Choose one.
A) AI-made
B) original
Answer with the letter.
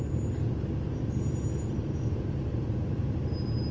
B